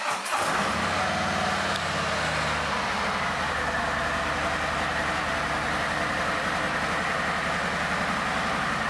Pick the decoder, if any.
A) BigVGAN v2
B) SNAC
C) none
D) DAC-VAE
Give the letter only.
C